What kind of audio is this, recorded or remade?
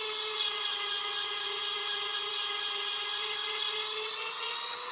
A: remade